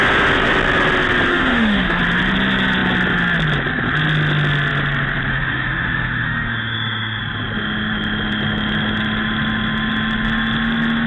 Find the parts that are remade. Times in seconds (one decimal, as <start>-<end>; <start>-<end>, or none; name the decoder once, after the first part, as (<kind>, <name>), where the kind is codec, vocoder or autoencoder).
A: 1.3-2.0 (autoencoder, DAC-VAE); 5.3-7.2